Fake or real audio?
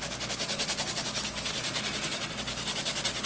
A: real